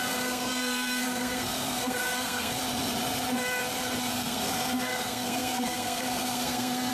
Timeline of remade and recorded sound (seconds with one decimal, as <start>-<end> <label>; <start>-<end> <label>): 0.0-2.6 remade; 2.6-4.0 recorded; 4.0-6.9 remade